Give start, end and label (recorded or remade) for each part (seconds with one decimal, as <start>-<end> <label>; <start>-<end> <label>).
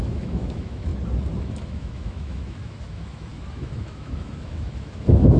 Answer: 0.0-0.9 remade; 0.9-1.4 recorded; 1.4-5.4 remade